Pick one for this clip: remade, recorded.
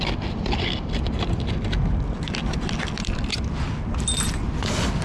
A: recorded